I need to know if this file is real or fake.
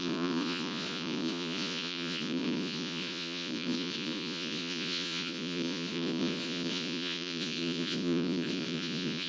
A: fake